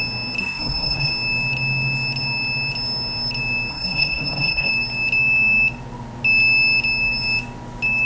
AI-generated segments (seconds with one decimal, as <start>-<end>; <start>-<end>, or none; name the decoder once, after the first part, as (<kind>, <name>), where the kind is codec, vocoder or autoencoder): 0.4-1.1 (codec, SNAC); 3.7-4.7